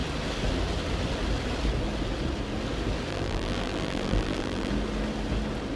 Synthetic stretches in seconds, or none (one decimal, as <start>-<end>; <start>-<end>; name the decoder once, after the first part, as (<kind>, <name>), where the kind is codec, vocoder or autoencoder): 3.1-4.7 (vocoder, BigVGAN v2)